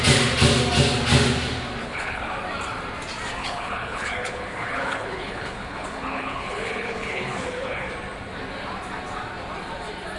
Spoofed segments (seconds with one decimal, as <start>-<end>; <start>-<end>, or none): 1.8-2.3; 3.4-7.9